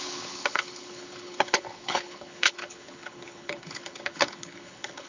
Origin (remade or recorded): remade